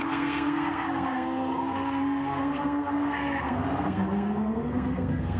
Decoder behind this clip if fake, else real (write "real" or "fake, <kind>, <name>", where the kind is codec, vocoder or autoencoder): fake, codec, SNAC